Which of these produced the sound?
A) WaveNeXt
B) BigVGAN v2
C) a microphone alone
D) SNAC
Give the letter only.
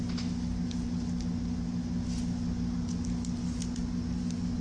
C